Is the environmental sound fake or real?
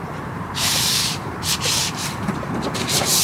fake